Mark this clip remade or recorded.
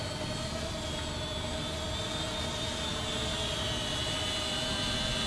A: recorded